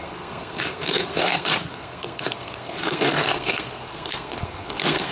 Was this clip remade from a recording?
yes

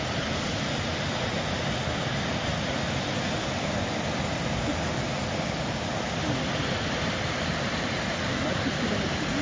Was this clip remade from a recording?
no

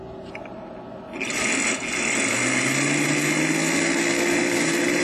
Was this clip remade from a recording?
no